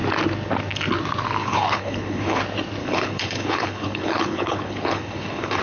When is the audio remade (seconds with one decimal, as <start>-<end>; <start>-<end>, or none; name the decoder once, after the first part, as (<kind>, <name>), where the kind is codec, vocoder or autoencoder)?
1.4-2.4 (codec, HILCodec); 2.8-5.6